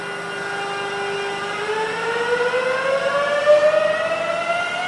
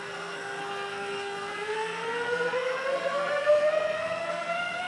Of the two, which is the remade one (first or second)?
second